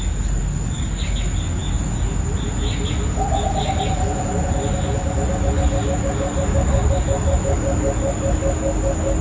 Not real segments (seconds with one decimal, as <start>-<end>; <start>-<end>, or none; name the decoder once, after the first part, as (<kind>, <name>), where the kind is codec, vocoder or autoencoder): 0.4-1.0 (codec, DAC)